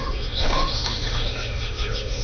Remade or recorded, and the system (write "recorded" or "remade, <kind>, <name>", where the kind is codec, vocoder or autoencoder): remade, autoencoder, DAC-VAE